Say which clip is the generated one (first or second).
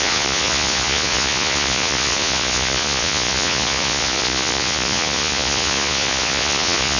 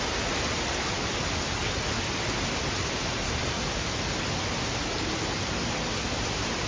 first